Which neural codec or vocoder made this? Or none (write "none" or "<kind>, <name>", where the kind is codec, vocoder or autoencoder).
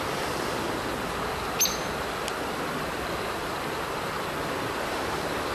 none